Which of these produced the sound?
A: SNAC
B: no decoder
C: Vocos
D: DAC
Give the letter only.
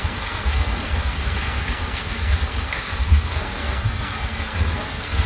A